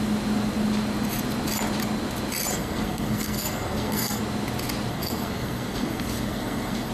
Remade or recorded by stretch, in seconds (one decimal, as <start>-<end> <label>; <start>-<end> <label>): 0.0-2.5 recorded; 2.5-4.2 remade; 4.2-4.9 recorded; 4.9-6.9 remade